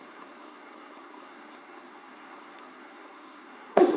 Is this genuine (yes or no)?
no